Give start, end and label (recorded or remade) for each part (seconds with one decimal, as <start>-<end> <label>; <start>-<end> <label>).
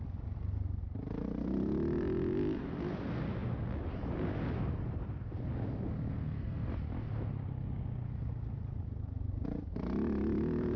0.0-6.1 recorded; 6.1-6.7 remade; 6.7-10.8 recorded